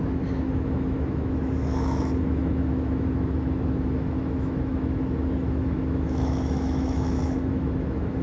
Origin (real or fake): fake